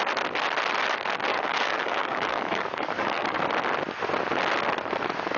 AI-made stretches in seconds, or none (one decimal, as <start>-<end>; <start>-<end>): 1.3-3.4